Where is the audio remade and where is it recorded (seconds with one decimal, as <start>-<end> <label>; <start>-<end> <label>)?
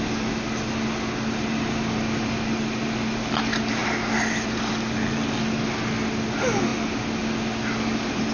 0.0-8.3 recorded